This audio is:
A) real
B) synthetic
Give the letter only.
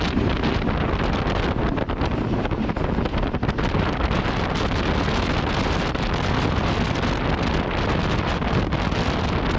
A